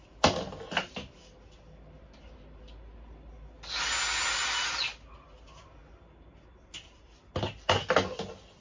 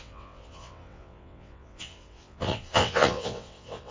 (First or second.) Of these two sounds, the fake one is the second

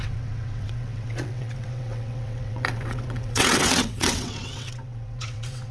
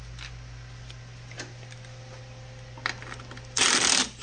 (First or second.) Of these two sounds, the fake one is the first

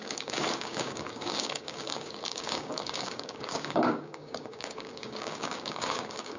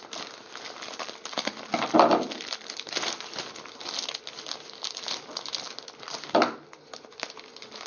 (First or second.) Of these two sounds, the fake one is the first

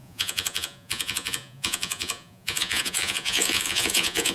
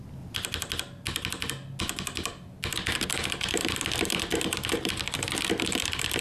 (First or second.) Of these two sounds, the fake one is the first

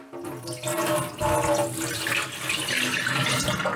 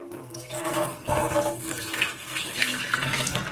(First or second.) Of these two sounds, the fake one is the second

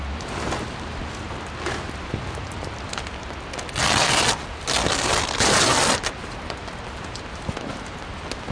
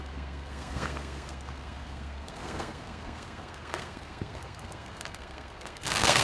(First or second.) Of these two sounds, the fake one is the second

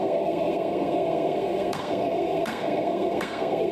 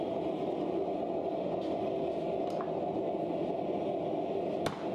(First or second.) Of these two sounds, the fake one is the first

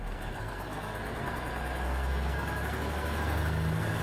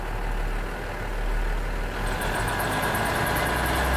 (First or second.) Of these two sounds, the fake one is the first